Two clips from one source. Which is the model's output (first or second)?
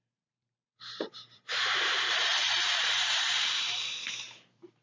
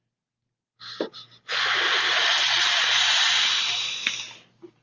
first